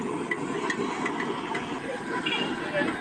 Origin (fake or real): real